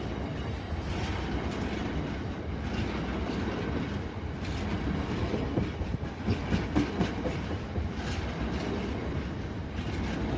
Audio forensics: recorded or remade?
recorded